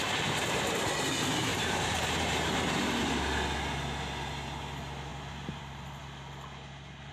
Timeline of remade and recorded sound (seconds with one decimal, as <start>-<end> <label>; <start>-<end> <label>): 0.0-1.5 recorded; 1.5-2.7 remade; 2.7-5.1 recorded; 5.1-6.0 remade; 6.0-7.1 recorded